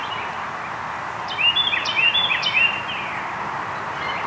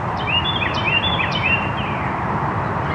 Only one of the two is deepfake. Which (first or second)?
second